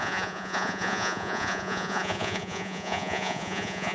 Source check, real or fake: fake